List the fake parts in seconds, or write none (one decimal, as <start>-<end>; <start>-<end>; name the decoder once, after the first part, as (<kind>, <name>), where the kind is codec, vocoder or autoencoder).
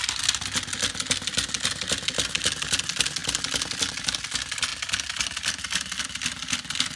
none